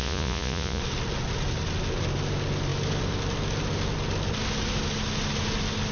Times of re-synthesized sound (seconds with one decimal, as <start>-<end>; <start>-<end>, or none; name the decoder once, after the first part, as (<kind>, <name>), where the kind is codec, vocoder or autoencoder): 0.0-0.8 (vocoder, Vocos)